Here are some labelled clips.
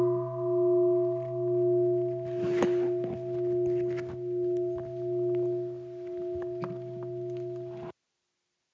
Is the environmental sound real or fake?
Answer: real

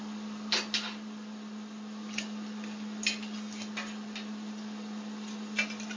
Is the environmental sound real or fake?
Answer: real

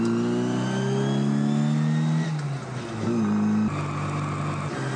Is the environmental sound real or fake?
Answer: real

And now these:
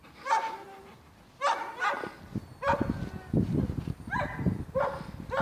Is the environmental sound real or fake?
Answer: real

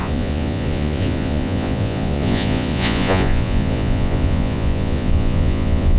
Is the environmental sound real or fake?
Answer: fake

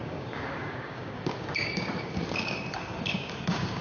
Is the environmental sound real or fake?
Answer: fake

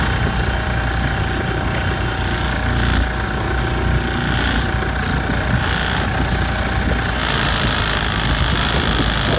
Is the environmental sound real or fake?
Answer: real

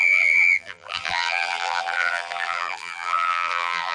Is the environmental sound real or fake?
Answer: fake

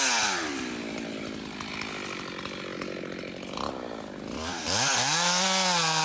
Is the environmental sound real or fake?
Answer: real